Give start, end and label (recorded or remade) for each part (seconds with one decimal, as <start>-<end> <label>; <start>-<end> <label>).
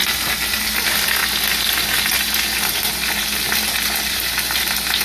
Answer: 0.0-5.0 recorded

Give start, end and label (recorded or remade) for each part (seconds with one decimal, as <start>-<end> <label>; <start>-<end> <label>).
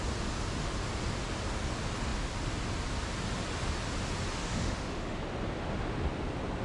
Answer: 0.0-4.4 recorded; 4.4-5.2 remade; 5.2-6.6 recorded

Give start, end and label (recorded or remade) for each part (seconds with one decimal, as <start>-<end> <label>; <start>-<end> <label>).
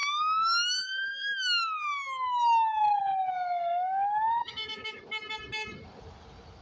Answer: 0.0-3.0 remade; 3.0-4.4 recorded; 4.4-5.0 remade; 5.0-6.6 recorded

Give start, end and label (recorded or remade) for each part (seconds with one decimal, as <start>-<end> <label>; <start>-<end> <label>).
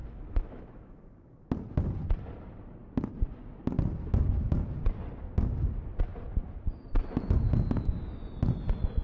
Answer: 0.0-1.5 remade; 1.5-9.0 recorded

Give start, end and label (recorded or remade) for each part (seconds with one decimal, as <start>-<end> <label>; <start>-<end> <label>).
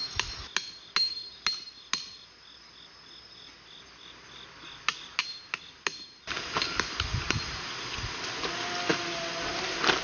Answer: 0.0-10.0 recorded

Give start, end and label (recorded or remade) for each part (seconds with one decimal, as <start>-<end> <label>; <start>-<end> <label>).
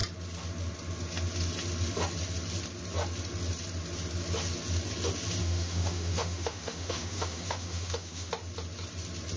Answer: 0.0-5.4 recorded; 5.4-8.3 remade; 8.3-9.4 recorded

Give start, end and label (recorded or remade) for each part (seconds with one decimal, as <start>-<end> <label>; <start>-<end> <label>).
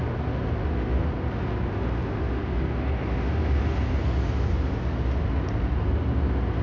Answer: 0.0-6.6 recorded